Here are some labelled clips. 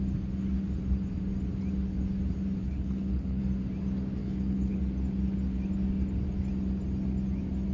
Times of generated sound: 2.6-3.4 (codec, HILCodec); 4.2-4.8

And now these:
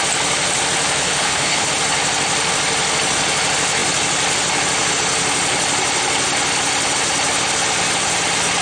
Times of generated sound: 1.0-1.7 (codec, HILCodec)

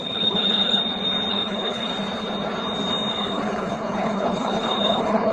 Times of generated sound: 0.0-0.8 (codec, HILCodec); 1.3-1.9; 3.1-5.3

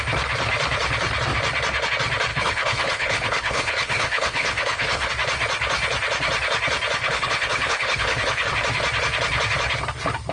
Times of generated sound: 2.3-5.1 (codec, HILCodec); 7.0-8.5